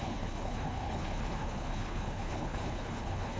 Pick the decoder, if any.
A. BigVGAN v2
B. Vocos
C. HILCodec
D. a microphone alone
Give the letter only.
C